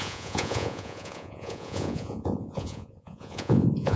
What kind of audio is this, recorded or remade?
remade